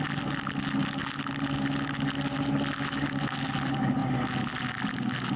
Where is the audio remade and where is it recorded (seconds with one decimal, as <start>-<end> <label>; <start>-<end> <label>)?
0.0-5.4 recorded